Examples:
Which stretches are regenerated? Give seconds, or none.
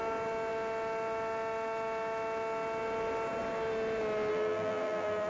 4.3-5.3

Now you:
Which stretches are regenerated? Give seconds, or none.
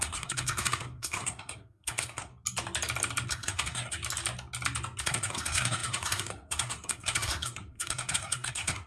0.0-2.3; 3.3-4.0; 5.0-8.9